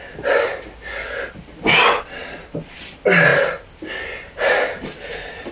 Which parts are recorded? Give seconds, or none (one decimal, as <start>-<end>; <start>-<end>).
0.0-5.5